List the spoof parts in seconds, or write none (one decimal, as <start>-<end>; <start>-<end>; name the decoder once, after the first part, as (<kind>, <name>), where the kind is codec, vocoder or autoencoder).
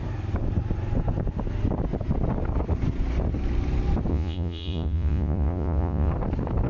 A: 4.1-6.1 (vocoder, Vocos)